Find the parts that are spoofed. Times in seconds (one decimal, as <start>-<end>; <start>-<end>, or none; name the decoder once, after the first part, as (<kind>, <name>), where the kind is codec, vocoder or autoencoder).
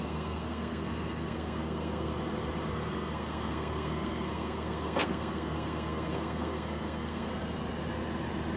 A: 0.0-2.1 (codec, SNAC); 2.7-7.3